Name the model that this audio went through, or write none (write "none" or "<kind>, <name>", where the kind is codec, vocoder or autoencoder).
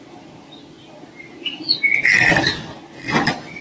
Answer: none